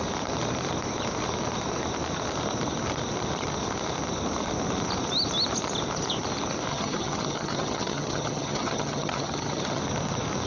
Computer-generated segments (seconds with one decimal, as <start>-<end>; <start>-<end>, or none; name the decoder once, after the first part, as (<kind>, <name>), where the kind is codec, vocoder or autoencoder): 6.7-9.8 (vocoder, HiFi-GAN)